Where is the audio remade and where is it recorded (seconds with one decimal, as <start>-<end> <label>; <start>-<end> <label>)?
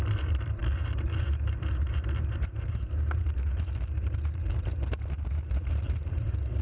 0.0-6.6 remade